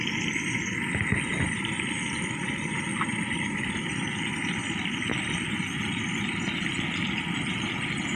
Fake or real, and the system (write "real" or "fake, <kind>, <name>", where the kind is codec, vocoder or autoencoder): real